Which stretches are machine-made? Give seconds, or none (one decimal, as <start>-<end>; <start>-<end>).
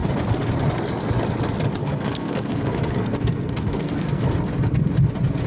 1.8-4.2